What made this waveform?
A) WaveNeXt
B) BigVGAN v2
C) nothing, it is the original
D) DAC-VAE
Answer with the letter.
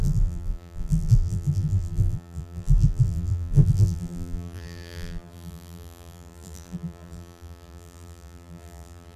B